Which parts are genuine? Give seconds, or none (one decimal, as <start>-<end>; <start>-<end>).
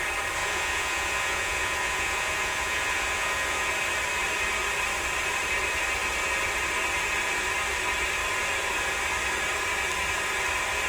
0.0-0.4; 3.7-10.9